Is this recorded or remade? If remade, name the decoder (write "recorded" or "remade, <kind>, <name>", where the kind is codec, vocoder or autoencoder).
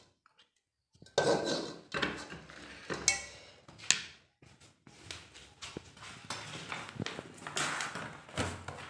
recorded